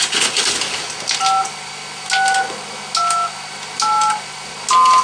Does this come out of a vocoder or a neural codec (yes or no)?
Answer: no